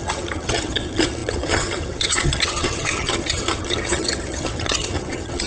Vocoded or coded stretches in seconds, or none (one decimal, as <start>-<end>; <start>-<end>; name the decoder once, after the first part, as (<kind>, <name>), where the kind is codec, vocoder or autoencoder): 0.0-5.5 (vocoder, HiFi-GAN)